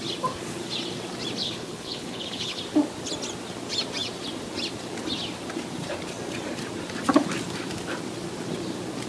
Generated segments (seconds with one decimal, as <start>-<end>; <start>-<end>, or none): 1.4-2.6